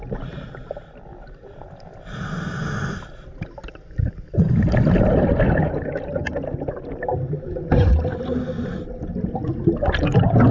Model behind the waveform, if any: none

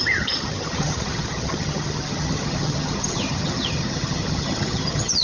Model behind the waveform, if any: vocoder, HiFi-GAN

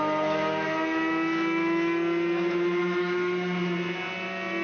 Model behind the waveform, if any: none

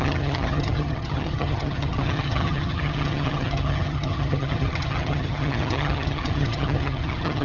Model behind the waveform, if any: vocoder, HiFi-GAN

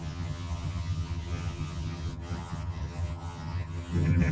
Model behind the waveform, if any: vocoder, HiFi-GAN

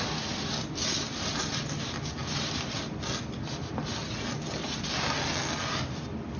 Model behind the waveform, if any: none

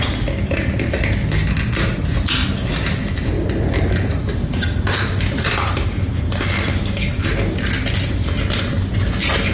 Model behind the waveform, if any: none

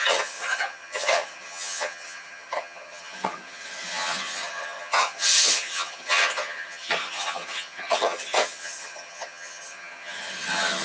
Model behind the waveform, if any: vocoder, HiFi-GAN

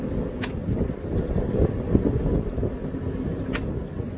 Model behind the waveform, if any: none